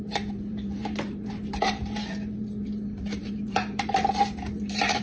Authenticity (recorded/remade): remade